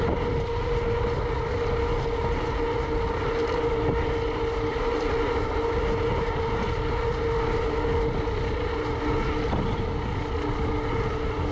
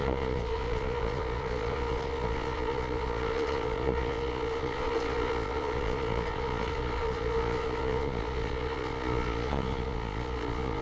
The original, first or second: first